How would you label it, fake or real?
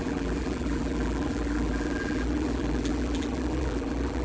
fake